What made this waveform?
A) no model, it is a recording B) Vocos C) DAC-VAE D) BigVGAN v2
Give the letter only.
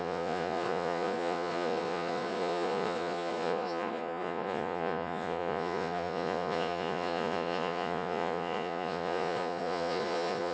B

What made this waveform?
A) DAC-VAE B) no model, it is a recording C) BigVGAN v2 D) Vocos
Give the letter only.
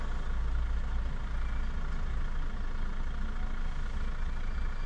B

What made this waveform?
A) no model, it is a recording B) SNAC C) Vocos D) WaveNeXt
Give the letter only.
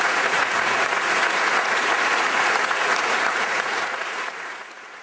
C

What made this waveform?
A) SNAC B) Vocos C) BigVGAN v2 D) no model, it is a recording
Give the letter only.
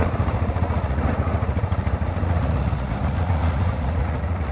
B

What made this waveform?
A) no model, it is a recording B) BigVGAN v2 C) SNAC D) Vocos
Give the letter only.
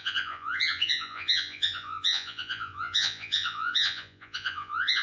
D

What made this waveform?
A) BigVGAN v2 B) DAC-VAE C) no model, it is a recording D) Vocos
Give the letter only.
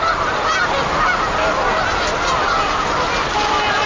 C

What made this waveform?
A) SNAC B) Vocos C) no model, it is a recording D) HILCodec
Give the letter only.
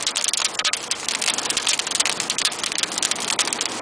C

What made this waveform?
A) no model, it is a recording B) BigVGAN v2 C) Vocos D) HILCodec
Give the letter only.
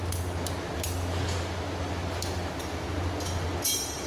A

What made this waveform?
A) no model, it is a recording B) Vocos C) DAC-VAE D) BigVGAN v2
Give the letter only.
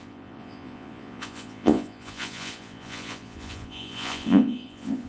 B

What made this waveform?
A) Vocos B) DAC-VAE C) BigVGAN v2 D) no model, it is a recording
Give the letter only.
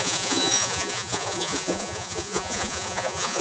A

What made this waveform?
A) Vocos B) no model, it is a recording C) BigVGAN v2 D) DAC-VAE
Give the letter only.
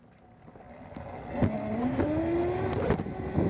B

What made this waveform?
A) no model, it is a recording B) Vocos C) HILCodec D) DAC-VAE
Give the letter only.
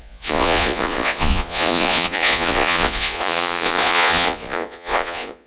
B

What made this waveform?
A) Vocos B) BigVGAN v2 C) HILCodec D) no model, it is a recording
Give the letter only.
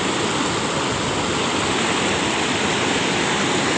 D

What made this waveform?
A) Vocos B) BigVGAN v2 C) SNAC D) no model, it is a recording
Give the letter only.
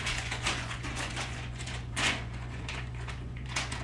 A